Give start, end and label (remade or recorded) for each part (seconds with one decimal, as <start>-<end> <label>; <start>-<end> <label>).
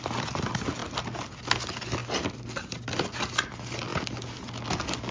0.0-5.1 recorded